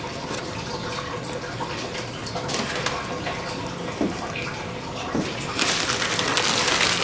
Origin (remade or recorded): recorded